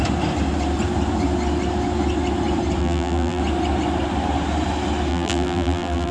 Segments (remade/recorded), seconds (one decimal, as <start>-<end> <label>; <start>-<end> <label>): 0.0-2.8 recorded; 2.8-3.4 remade; 3.4-5.1 recorded; 5.1-6.1 remade